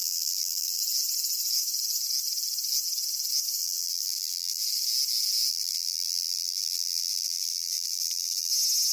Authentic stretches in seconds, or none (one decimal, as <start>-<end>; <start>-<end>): 0.8-3.6; 4.6-5.5; 8.5-8.9